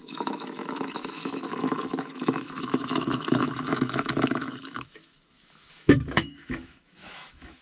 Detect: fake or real fake